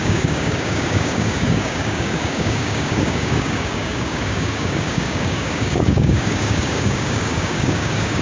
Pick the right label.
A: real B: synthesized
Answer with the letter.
B